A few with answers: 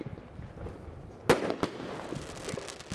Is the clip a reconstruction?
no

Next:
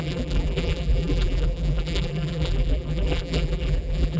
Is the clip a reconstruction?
yes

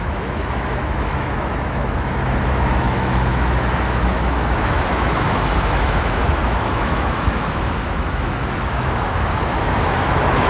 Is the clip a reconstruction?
yes